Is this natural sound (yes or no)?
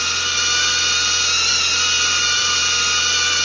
yes